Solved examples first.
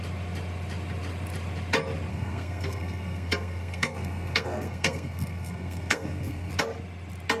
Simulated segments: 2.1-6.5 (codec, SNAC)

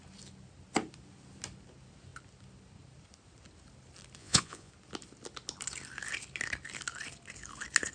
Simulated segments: 4.2-4.7 (vocoder, Vocos)

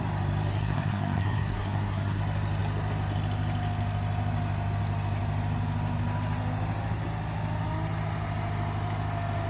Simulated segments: 0.5-2.2 (codec, SNAC)

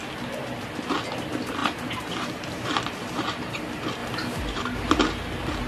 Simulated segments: 1.6-3.6 (vocoder, BigVGAN v2); 4.0-4.9